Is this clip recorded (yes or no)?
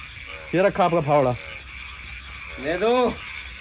yes